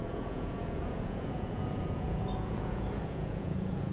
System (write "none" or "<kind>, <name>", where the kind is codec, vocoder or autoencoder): vocoder, Vocos